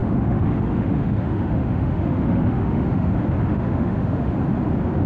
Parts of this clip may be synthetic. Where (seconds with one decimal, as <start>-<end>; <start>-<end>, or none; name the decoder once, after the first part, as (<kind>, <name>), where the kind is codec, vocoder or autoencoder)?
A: 0.0-3.1 (autoencoder, DAC-VAE); 3.5-4.3